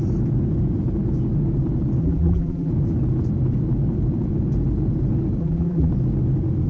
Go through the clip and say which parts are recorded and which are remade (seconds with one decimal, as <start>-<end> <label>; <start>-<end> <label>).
0.0-2.0 recorded; 2.0-2.7 remade; 2.7-5.4 recorded; 5.4-5.9 remade; 5.9-6.7 recorded